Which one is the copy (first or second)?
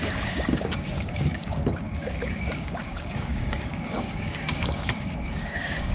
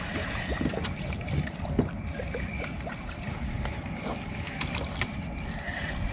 first